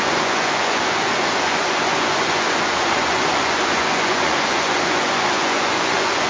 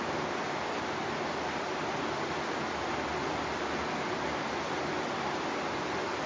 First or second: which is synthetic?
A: first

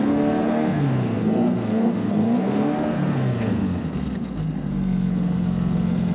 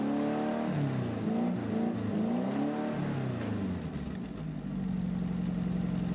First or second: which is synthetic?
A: first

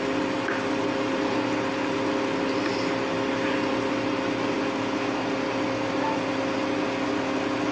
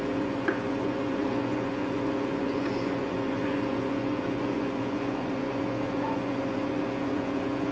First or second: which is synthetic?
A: second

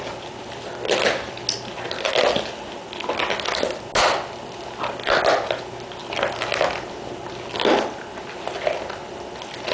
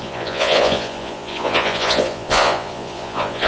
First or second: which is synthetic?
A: second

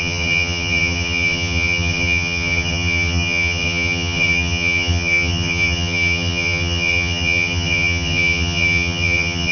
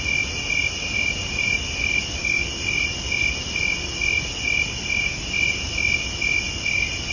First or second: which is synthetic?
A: first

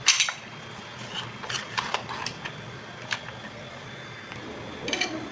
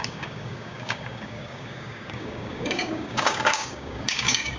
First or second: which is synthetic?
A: second